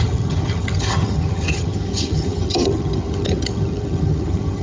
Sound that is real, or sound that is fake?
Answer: fake